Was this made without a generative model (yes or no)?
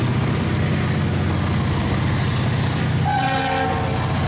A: yes